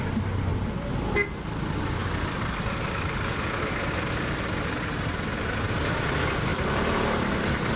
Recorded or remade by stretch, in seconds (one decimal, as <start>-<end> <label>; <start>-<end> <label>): 0.0-6.5 recorded; 6.5-7.3 remade; 7.3-7.8 recorded